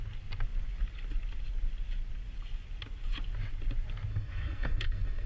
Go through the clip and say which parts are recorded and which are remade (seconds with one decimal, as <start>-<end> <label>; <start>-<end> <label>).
0.0-4.1 recorded; 4.1-5.3 remade